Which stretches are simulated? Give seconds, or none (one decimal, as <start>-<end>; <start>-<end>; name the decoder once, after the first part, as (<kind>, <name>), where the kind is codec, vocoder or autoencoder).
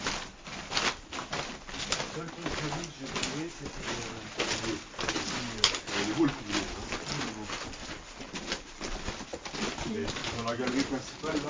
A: none